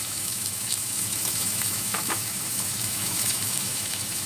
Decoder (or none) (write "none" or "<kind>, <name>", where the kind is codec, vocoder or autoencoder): autoencoder, DAC-VAE